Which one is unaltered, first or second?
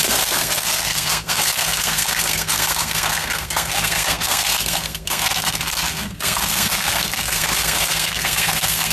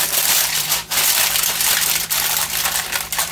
second